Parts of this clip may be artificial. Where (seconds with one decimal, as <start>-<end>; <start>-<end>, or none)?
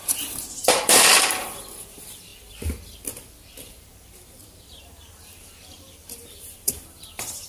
0.0-2.3; 3.8-7.5